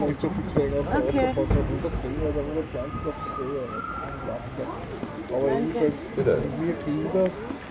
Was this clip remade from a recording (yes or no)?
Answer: no